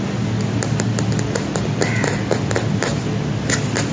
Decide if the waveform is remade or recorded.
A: recorded